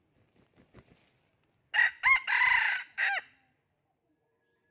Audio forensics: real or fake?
real